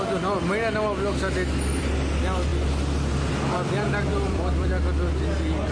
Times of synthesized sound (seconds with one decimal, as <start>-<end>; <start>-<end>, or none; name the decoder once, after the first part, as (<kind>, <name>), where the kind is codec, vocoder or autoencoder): 4.1-4.7 (vocoder, BigVGAN v2)

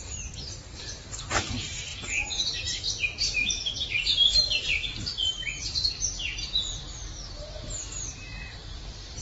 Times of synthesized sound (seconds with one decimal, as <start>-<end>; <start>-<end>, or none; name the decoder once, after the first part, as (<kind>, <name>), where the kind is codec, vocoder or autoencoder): 0.0-1.9 (vocoder, BigVGAN v2); 3.5-6.3; 7.1-9.2

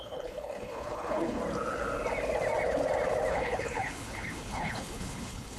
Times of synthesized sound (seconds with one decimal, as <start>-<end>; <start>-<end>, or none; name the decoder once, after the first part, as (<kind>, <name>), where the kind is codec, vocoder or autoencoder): 0.0-1.4 (codec, HILCodec); 3.3-5.6

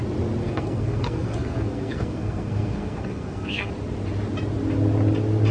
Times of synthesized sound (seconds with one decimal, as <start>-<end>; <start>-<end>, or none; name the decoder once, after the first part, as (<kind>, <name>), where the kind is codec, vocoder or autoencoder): 0.4-3.7 (codec, SNAC)

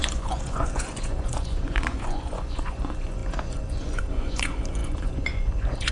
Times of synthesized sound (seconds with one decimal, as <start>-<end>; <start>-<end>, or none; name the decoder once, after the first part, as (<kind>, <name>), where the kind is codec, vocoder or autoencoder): 0.0-5.9 (vocoder, Vocos)

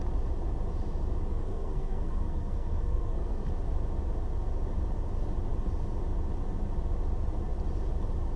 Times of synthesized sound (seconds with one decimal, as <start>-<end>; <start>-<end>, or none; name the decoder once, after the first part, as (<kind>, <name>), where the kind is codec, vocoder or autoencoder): 1.3-3.5 (codec, SNAC)